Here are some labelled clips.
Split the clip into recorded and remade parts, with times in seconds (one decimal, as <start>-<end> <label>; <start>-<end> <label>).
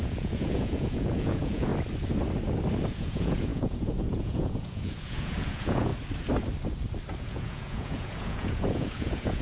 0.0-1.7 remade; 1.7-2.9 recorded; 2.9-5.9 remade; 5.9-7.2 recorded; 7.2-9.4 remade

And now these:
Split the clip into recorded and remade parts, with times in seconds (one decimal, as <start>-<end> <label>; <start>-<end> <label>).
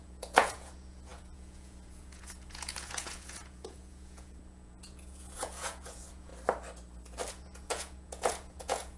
0.0-6.3 remade; 6.3-7.3 recorded; 7.3-9.0 remade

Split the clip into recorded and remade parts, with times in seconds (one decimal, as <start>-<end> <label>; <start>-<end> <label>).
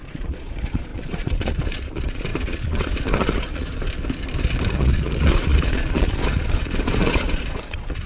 0.0-3.8 remade; 3.8-4.7 recorded; 4.7-8.1 remade